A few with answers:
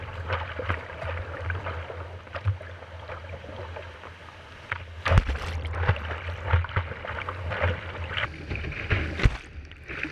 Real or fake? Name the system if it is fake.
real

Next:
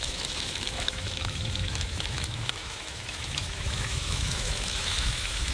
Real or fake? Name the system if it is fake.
fake, autoencoder, DAC-VAE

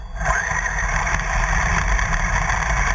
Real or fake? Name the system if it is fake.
real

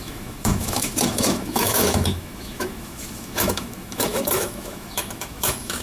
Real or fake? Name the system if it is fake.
fake, autoencoder, DAC-VAE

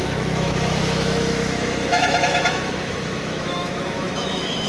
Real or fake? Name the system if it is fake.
fake, autoencoder, DAC-VAE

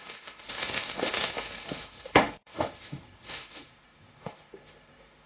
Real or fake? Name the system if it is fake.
fake, autoencoder, DAC-VAE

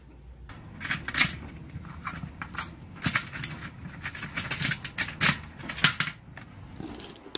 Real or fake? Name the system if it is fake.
real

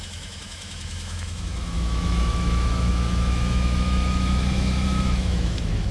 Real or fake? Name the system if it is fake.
fake, autoencoder, DAC-VAE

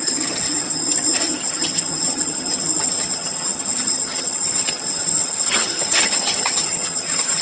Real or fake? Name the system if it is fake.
fake, vocoder, HiFi-GAN